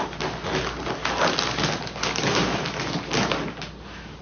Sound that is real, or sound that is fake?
real